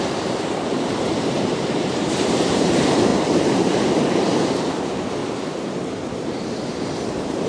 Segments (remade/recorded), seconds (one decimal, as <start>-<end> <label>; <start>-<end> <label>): 0.0-5.2 remade; 5.2-6.1 recorded; 6.1-7.5 remade